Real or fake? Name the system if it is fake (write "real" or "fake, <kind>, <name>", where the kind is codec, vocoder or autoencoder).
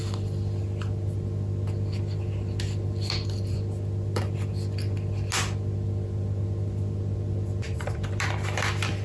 real